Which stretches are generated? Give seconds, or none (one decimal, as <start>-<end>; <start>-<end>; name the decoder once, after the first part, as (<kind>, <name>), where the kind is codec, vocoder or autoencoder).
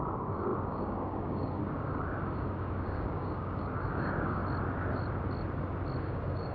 0.0-4.4 (codec, DAC); 6.0-6.5